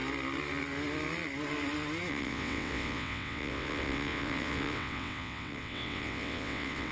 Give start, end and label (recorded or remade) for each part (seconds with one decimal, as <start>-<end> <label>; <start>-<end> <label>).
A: 0.0-2.1 recorded; 2.1-6.9 remade